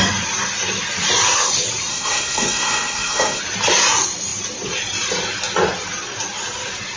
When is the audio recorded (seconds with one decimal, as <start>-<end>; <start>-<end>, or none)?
0.0-1.9; 3.4-7.0